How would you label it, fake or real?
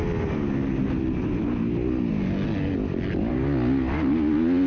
real